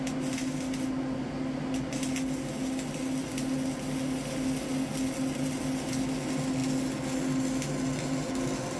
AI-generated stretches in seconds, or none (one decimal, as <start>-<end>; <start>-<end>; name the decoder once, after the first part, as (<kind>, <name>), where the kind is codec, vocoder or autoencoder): none